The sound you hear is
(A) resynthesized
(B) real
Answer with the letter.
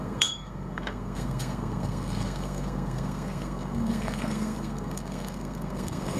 A